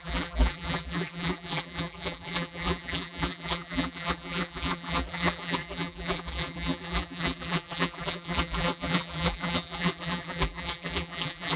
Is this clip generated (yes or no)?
yes